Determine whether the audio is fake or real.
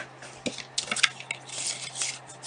real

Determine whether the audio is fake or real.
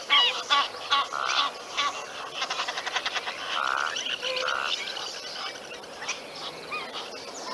real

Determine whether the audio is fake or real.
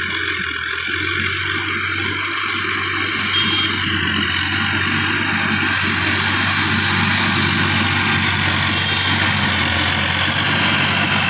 real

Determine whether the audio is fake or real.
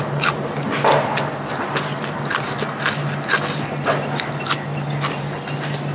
real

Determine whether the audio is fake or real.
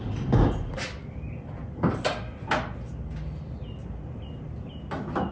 real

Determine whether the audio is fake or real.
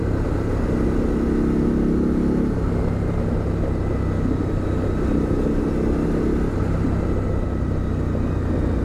real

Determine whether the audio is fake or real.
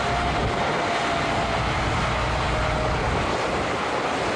real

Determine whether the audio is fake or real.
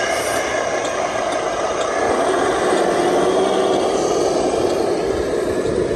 real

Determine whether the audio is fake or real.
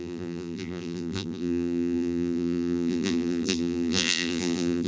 fake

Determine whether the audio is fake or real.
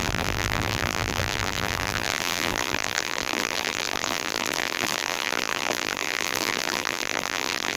fake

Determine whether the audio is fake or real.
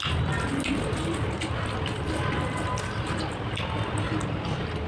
real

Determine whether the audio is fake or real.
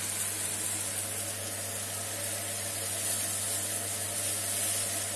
real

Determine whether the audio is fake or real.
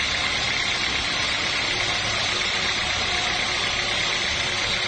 fake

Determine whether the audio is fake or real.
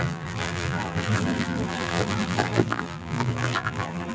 fake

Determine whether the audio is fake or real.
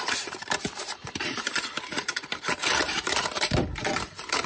fake